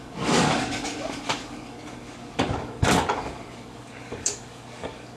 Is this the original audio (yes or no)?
no